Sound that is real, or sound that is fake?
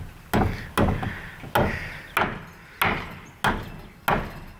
real